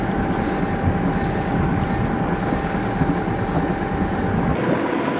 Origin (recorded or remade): recorded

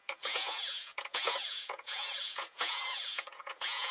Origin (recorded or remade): remade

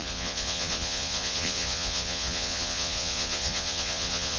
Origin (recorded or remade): remade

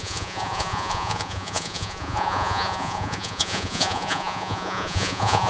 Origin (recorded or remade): remade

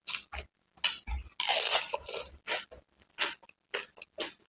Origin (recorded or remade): recorded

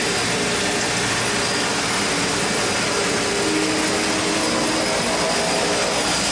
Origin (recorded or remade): recorded